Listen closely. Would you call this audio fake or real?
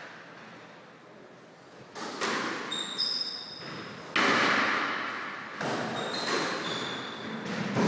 real